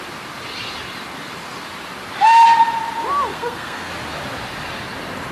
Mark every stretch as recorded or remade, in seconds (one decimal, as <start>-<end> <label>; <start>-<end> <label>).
0.0-3.3 recorded; 3.3-3.9 remade; 3.9-5.3 recorded